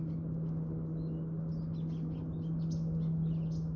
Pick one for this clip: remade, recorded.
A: recorded